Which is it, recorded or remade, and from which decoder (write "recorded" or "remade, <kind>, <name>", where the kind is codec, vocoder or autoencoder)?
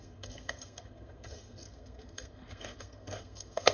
remade, codec, SNAC